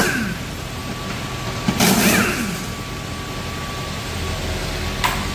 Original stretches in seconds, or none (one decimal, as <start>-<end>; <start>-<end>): 0.0-5.3

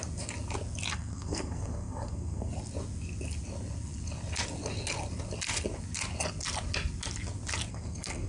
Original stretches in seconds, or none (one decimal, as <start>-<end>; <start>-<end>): 0.0-0.9; 2.5-7.7

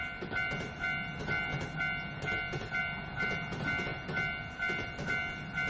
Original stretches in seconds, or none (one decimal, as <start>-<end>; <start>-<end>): 0.0-5.7

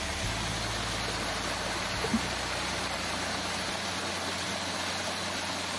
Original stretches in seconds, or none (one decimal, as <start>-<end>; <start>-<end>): 0.0-5.8

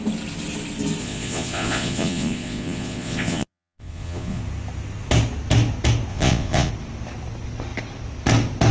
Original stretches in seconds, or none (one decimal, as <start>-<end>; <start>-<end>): 0.0-1.0; 4.4-6.1; 6.7-8.7

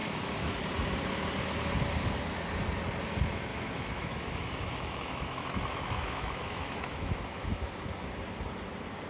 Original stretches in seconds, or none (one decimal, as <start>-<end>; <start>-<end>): 0.5-3.5; 7.5-9.1

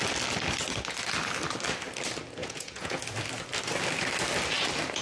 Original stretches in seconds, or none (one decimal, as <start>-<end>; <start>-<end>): 0.0-2.4; 3.0-5.0

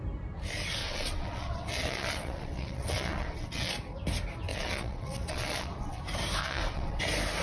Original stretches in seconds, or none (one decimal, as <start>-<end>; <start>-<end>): 0.0-0.8; 3.7-4.5; 6.0-6.4; 7.0-7.4